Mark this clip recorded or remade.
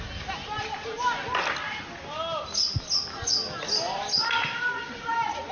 recorded